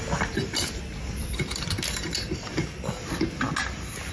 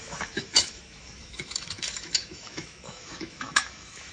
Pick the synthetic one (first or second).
second